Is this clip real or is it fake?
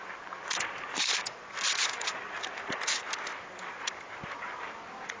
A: fake